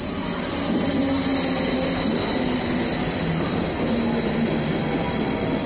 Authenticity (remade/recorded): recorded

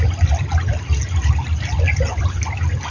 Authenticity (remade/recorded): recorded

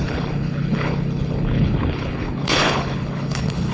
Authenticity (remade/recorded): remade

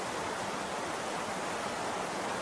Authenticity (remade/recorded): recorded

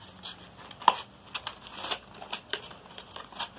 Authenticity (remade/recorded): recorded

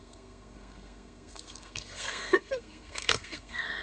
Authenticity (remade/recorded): remade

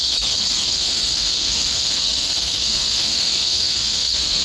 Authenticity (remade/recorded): remade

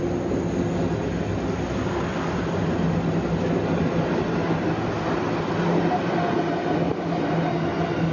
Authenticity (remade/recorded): recorded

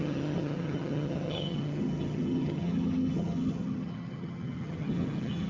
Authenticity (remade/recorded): remade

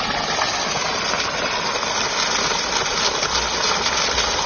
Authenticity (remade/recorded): recorded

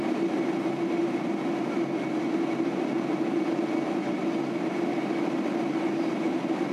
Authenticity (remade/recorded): recorded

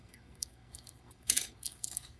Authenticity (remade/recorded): remade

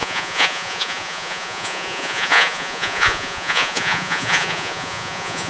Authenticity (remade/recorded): remade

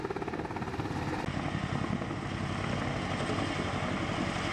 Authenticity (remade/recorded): recorded